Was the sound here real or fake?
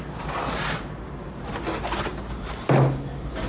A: real